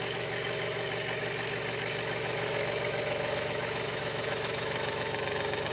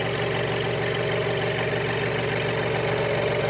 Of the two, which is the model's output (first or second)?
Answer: first